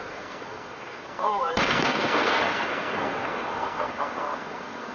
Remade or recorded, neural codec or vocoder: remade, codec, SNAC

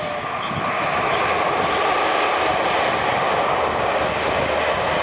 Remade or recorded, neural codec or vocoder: recorded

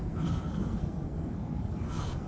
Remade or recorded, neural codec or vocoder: remade, codec, SNAC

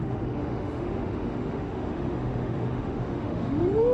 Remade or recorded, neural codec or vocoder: remade, autoencoder, DAC-VAE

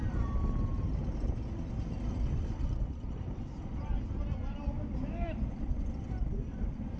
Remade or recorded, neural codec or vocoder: recorded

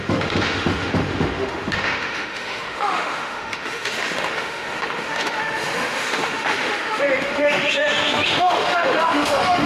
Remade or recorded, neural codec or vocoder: remade, autoencoder, DAC-VAE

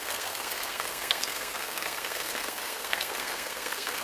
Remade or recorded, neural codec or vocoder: remade, codec, SNAC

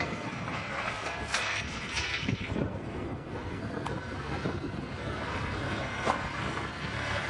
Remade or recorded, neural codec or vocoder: remade, codec, SNAC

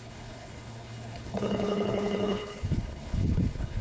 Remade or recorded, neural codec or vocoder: remade, codec, HILCodec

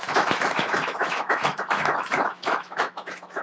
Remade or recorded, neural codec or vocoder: remade, autoencoder, DAC-VAE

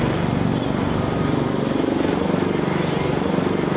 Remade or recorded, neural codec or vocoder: recorded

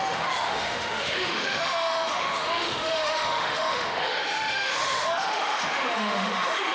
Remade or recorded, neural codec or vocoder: remade, autoencoder, DAC-VAE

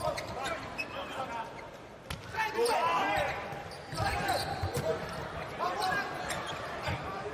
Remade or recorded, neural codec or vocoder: recorded